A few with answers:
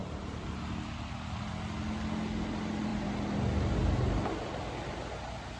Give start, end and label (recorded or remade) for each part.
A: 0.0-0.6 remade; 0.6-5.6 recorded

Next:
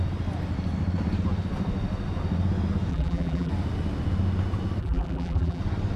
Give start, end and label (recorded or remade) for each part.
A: 0.0-2.9 recorded; 2.9-3.5 remade; 3.5-4.8 recorded; 4.8-5.6 remade; 5.6-6.0 recorded

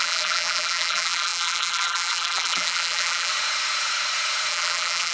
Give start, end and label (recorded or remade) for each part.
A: 0.0-3.3 remade; 3.3-4.5 recorded; 4.5-5.1 remade

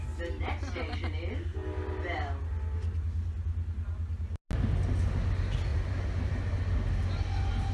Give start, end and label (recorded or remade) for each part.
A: 0.0-7.7 recorded

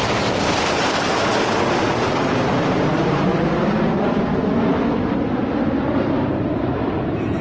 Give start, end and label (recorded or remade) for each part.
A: 0.0-1.1 remade; 1.1-2.4 recorded; 2.4-3.3 remade; 3.3-6.3 recorded; 6.3-7.4 remade

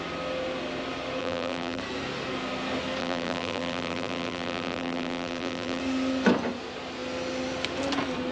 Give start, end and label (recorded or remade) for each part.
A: 0.0-1.2 recorded; 1.2-1.8 remade; 1.8-3.0 recorded; 3.0-5.8 remade; 5.8-8.3 recorded

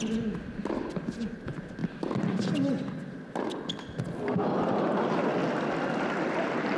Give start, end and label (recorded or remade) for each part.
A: 0.0-5.4 recorded; 5.4-6.0 remade; 6.0-6.8 recorded